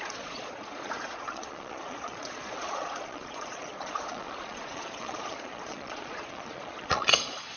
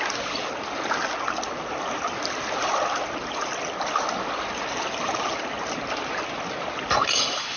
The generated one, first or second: first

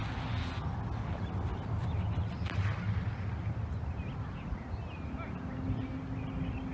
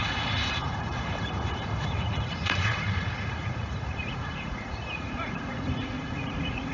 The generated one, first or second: second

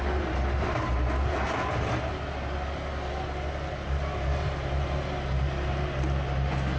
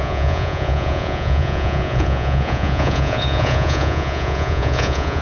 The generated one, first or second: second